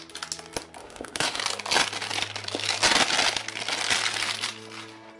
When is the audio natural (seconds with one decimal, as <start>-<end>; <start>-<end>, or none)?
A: 0.0-0.8; 1.4-5.2